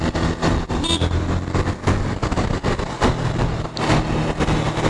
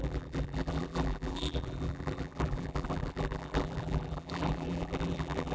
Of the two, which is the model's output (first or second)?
second